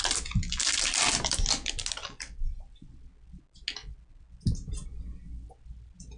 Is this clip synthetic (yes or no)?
no